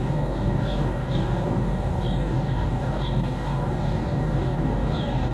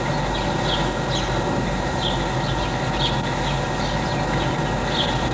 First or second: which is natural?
second